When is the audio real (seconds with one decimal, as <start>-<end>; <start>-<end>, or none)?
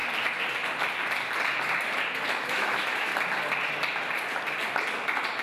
0.0-2.4; 3.1-5.4